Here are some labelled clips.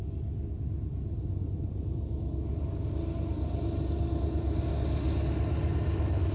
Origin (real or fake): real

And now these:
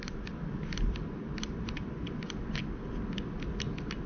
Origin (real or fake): real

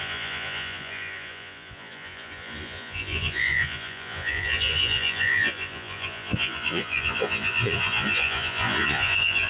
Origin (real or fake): fake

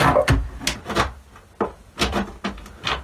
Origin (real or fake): real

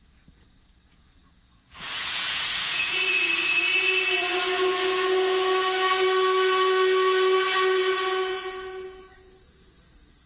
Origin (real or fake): fake